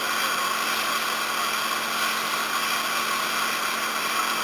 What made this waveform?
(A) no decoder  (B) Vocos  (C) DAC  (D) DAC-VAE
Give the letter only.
A